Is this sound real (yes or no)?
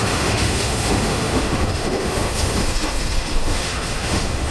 no